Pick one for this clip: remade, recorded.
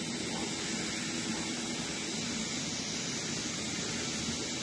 recorded